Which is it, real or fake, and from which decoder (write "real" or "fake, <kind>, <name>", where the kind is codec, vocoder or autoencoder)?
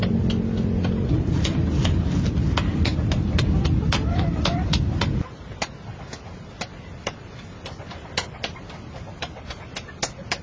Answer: real